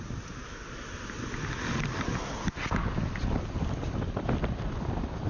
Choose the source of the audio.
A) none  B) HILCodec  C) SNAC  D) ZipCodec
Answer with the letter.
A